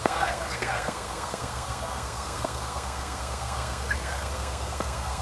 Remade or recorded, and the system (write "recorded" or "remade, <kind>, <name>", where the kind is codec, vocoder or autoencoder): remade, codec, SNAC